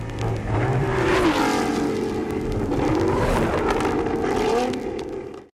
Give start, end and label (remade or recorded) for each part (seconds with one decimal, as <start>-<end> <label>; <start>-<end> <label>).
0.0-0.8 recorded; 0.8-1.4 remade; 1.4-2.2 recorded; 2.2-3.4 remade; 3.4-5.6 recorded